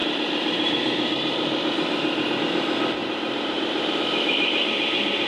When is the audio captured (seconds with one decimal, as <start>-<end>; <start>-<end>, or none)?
2.4-3.0; 3.9-5.3